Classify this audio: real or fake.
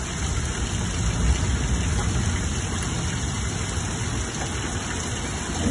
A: real